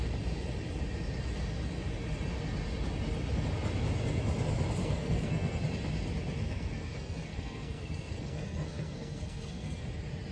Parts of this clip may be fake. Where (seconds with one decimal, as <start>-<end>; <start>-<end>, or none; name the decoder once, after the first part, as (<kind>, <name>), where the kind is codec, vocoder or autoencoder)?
4.8-5.6 (codec, SNAC); 6.4-9.8